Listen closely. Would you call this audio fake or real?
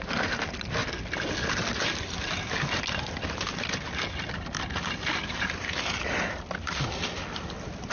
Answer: real